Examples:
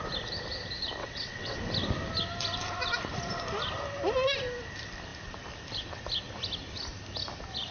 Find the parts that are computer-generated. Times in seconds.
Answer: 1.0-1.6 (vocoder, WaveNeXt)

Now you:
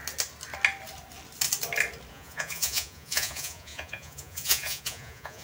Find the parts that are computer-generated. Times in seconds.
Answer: 2.1-5.4 (vocoder, Vocos)

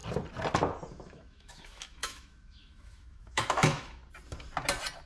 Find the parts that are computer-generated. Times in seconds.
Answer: 0.9-4.0 (autoencoder, DAC-VAE)